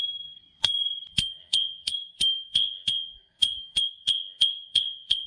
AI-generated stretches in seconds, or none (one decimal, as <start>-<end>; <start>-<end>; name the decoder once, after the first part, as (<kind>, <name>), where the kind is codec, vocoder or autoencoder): 0.0-0.4 (codec, SNAC); 1.1-5.3